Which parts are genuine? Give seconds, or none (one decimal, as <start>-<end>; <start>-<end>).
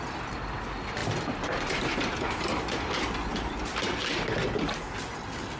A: 0.0-3.3; 4.0-5.6